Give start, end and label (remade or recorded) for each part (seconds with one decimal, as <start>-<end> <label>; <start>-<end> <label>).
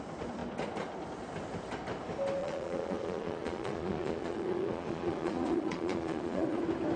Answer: 0.0-2.4 recorded; 2.4-6.6 remade; 6.6-7.0 recorded